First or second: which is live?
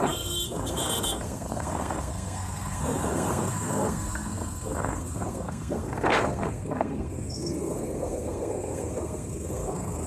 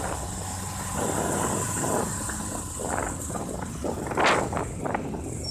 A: second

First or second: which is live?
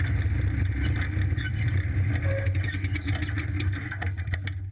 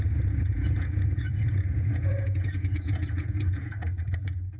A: first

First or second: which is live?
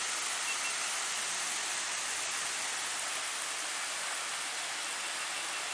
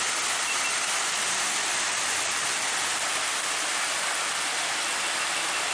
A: first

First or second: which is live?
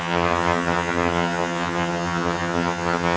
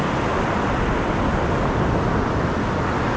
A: second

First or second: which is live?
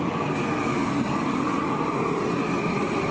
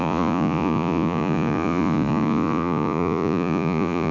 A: first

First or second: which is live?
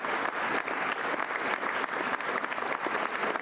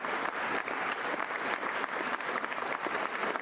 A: first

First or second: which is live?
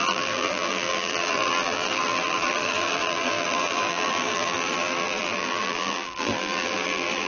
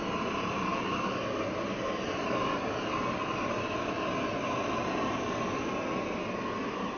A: second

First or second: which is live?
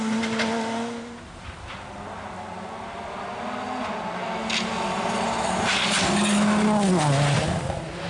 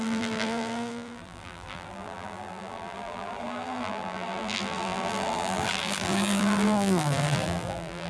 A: first